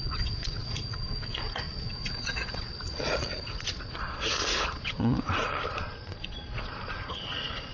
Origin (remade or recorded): remade